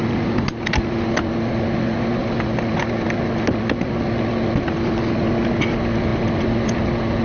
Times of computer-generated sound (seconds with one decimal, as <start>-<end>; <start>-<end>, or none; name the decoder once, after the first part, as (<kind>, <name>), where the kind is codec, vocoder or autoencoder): none